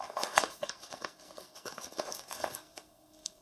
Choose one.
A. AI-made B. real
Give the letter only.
A